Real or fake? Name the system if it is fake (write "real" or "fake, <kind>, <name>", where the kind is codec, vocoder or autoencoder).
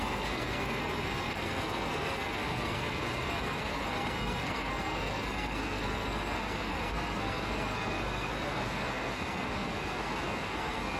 fake, codec, SNAC